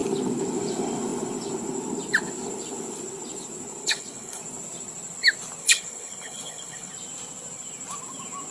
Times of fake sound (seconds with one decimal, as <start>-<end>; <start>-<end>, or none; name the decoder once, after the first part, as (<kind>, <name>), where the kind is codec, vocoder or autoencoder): 3.8-4.4 (codec, HILCodec); 5.6-6.9